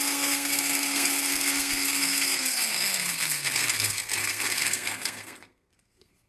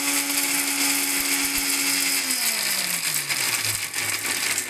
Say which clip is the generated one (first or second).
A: first